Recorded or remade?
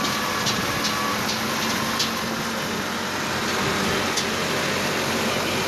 recorded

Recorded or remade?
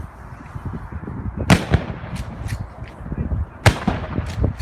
recorded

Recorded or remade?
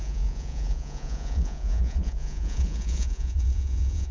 remade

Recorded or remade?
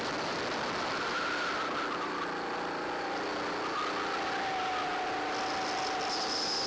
recorded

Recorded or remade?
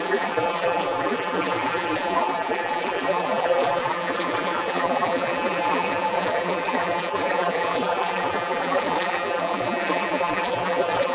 remade